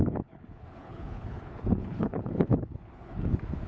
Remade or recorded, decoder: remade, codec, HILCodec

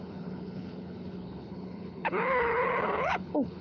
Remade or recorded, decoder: remade, codec, HILCodec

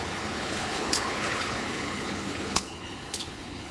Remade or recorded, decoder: remade, codec, HILCodec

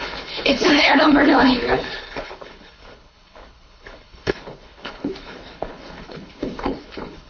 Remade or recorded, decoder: remade, codec, HILCodec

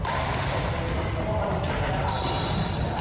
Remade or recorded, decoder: recorded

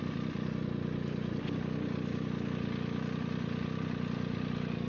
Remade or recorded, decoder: recorded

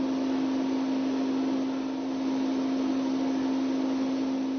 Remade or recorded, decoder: recorded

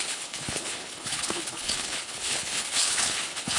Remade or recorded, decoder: remade, codec, HILCodec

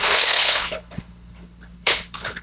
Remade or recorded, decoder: remade, codec, HILCodec